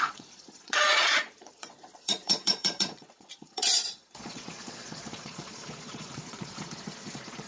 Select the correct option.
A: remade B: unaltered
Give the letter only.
A